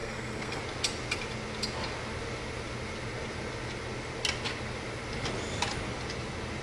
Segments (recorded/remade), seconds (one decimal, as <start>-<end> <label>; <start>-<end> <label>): 0.0-0.6 remade; 0.6-6.6 recorded